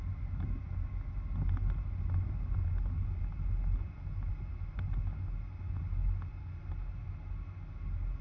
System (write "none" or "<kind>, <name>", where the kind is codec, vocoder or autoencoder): none